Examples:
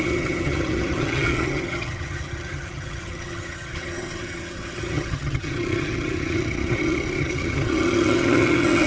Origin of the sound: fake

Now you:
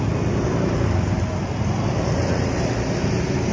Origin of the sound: real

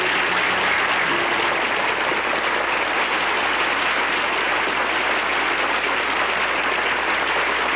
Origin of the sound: real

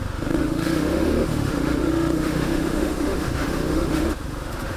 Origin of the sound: fake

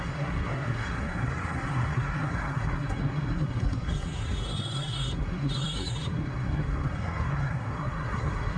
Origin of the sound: fake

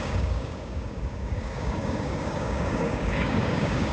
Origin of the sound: fake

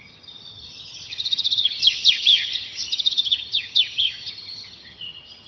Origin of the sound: fake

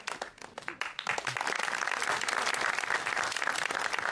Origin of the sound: real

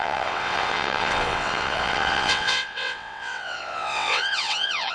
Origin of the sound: fake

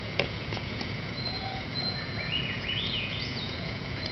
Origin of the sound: fake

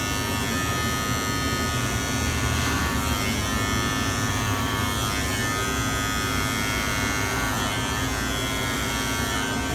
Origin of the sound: real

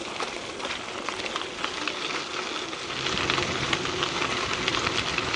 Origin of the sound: real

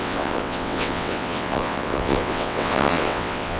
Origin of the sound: fake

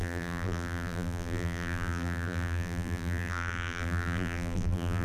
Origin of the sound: fake